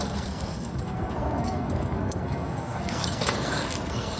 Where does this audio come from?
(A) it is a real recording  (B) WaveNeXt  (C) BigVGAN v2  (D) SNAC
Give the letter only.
D